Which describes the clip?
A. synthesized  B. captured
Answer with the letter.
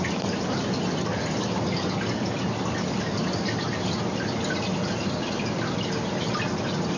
B